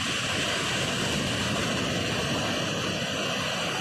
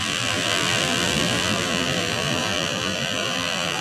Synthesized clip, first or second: second